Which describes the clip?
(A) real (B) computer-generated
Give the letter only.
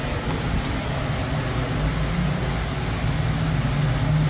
A